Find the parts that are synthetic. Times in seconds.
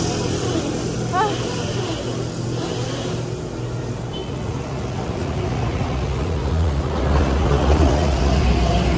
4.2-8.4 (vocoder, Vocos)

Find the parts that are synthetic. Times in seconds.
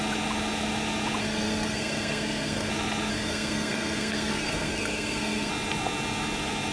1.2-2.7 (codec, SNAC); 3.1-5.5